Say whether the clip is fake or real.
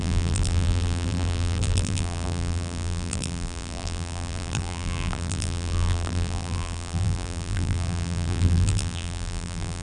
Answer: fake